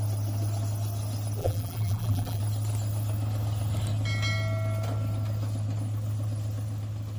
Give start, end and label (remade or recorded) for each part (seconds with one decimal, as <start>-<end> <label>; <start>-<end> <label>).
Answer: 0.0-1.4 recorded; 1.4-2.4 remade; 2.4-7.2 recorded